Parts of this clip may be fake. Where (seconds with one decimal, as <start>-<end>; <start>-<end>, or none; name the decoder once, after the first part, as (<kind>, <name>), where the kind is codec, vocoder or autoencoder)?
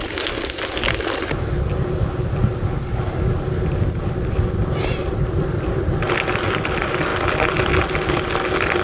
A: none